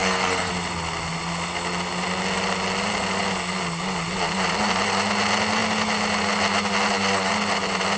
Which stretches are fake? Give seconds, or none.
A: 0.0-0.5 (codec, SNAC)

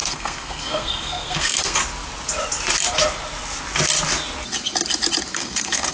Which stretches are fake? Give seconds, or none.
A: 0.0-1.8 (codec, SNAC); 5.3-5.9